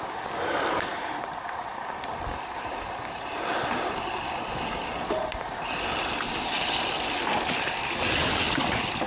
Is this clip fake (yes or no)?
no